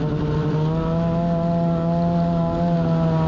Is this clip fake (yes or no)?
no